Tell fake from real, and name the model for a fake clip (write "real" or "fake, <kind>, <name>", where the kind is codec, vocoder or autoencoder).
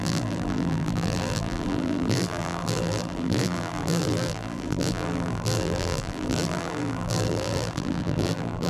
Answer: fake, vocoder, BigVGAN v2